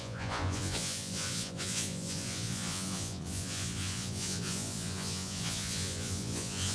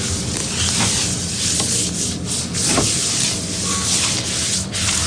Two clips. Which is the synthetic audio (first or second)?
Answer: first